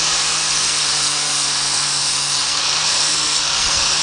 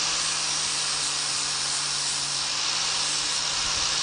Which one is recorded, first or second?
second